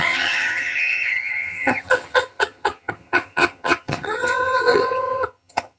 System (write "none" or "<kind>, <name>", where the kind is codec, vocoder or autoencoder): vocoder, HiFi-GAN